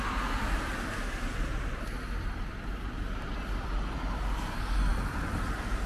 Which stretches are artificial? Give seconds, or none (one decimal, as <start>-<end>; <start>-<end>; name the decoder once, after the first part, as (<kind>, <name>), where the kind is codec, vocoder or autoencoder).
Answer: none